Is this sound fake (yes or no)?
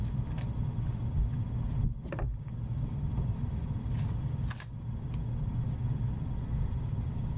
no